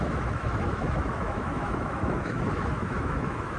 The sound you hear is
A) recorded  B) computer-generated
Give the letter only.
B